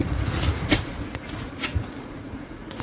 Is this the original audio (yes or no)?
no